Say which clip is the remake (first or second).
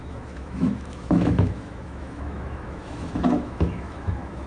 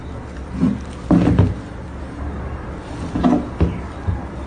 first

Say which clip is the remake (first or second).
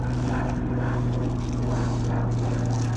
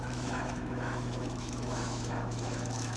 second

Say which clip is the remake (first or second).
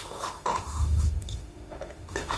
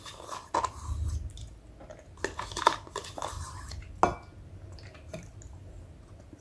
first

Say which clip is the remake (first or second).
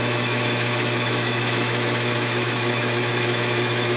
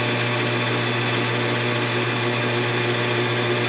first